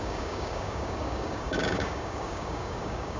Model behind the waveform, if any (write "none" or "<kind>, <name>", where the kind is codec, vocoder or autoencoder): codec, DAC